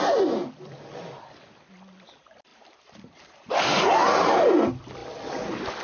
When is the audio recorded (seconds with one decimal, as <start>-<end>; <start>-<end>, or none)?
0.0-2.5; 3.9-5.8